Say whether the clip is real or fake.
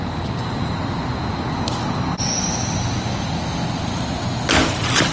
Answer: real